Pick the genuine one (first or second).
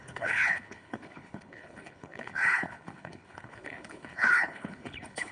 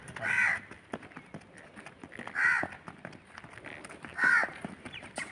second